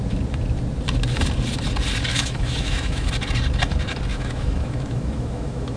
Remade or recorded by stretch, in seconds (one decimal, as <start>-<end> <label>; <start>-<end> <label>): 0.0-2.1 recorded; 2.1-3.1 remade; 3.1-4.1 recorded; 4.1-5.8 remade